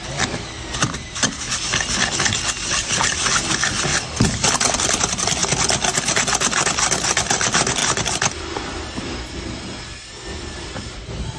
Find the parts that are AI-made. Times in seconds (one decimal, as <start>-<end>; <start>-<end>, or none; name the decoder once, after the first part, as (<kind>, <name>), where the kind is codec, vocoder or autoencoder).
3.9-4.5 (vocoder, BigVGAN v2)